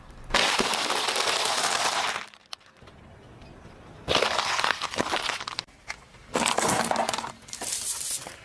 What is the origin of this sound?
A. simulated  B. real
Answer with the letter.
B